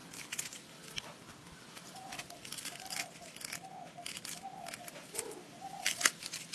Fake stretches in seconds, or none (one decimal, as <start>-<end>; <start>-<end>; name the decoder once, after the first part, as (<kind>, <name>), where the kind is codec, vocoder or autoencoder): none